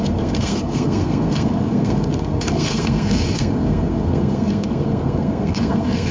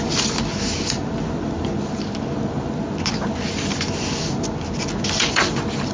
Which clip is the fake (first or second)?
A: first